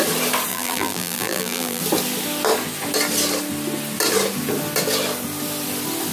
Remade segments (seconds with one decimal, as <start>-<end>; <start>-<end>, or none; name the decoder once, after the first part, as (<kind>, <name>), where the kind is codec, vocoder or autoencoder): 0.5-1.8 (vocoder, BigVGAN v2)